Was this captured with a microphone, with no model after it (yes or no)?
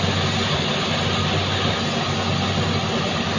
yes